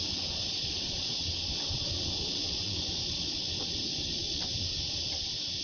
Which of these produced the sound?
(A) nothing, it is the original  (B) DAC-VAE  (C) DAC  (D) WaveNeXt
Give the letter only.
D